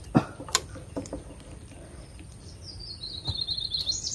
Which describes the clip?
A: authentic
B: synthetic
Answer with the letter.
B